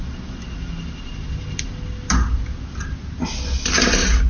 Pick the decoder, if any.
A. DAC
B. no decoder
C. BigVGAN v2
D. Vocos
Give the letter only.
B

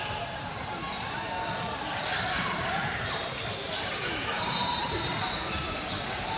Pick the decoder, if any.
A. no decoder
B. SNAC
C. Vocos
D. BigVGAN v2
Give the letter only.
D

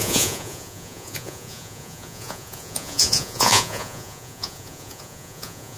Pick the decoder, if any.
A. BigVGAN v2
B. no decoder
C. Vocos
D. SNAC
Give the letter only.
C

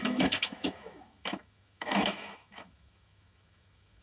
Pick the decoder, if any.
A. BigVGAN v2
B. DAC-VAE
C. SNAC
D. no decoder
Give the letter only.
B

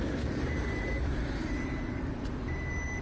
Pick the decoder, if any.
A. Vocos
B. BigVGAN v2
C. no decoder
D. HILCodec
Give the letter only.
B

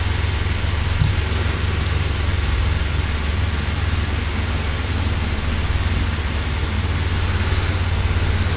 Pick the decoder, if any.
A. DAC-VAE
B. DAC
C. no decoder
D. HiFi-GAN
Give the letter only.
C